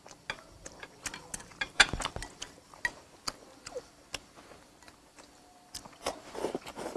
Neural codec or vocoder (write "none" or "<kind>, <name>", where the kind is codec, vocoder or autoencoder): none